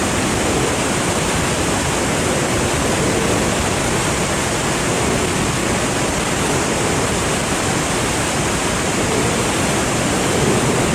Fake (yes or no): no